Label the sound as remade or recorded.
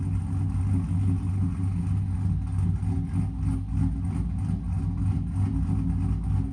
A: recorded